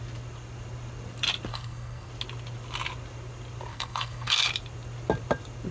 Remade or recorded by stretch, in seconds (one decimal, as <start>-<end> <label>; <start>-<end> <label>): 0.0-1.5 recorded; 1.5-2.1 remade; 2.1-3.7 recorded; 3.7-4.4 remade; 4.4-5.7 recorded